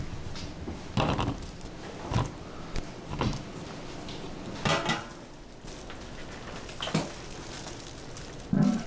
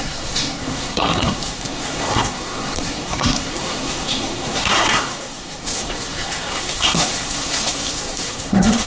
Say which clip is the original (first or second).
first